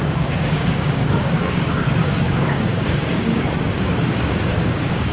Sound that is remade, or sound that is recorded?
remade